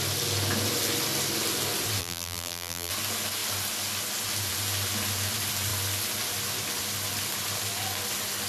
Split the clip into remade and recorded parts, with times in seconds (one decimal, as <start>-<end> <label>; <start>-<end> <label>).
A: 0.0-2.0 recorded; 2.0-2.9 remade; 2.9-8.5 recorded